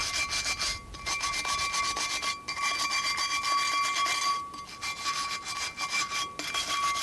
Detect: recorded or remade recorded